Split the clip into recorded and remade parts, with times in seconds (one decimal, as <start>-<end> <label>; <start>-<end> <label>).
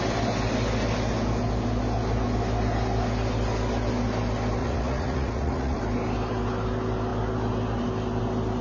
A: 0.0-4.6 recorded; 4.6-5.8 remade; 5.8-8.6 recorded